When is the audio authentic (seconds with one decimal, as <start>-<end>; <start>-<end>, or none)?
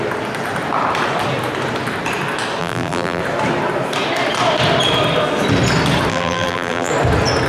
0.0-2.6; 3.2-6.1; 6.9-7.5